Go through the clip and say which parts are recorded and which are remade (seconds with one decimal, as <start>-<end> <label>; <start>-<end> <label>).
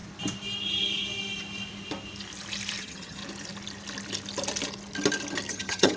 0.0-2.8 recorded; 2.8-3.2 remade; 3.2-5.5 recorded; 5.5-6.0 remade